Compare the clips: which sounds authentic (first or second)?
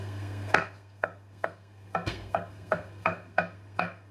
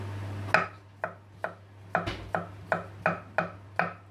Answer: second